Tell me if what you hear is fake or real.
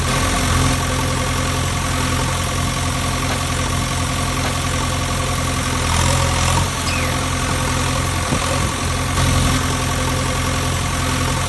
real